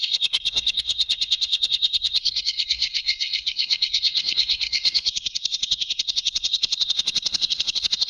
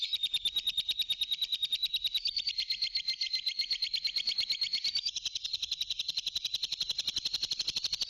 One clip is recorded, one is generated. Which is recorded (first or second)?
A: second